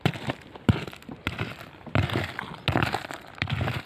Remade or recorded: recorded